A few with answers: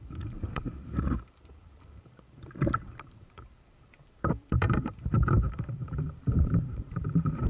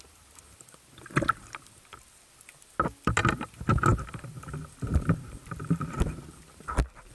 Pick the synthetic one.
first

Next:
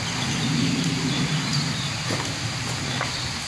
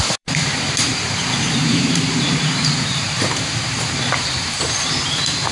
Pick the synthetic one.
second